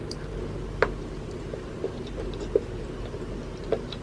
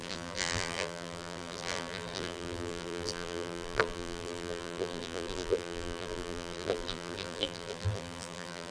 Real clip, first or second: first